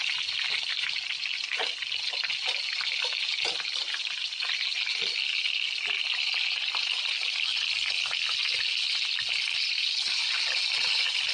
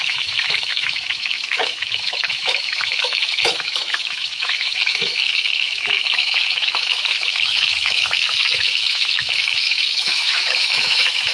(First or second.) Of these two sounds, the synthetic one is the second